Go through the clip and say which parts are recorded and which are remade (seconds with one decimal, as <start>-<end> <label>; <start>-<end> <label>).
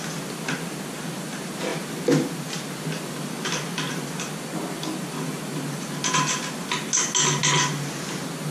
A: 0.0-8.5 recorded